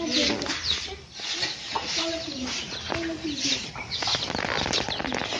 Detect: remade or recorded recorded